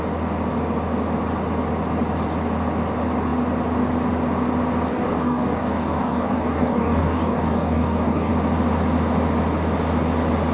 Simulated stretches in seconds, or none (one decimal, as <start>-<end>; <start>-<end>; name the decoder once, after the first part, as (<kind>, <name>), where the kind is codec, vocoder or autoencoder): 4.9-8.3 (codec, DAC)